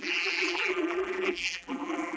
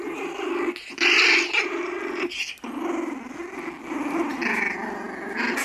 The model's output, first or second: first